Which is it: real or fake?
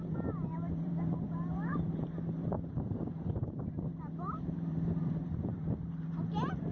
fake